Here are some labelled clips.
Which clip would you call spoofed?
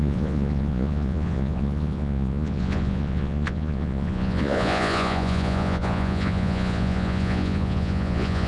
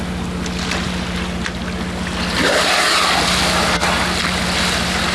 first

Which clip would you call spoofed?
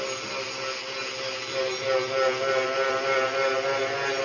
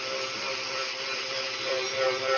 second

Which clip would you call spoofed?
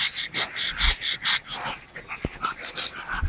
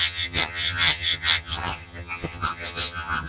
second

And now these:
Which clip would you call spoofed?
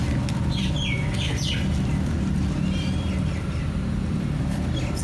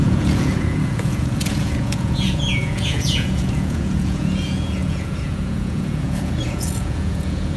second